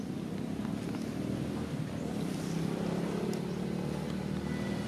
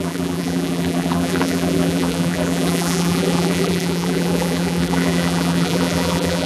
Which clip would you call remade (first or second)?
second